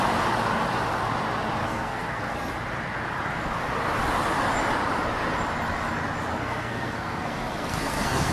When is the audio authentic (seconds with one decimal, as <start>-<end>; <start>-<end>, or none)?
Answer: 0.0-1.6; 2.5-6.3